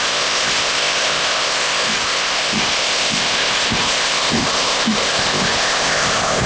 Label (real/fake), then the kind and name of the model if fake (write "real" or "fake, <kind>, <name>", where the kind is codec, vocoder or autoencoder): fake, codec, ZipCodec